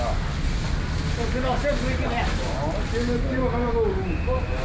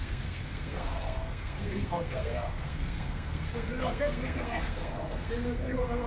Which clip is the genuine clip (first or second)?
first